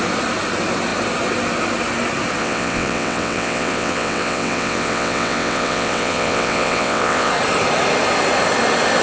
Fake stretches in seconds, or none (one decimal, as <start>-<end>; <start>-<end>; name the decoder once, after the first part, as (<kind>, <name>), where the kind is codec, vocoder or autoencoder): 2.4-7.3 (vocoder, WaveNeXt)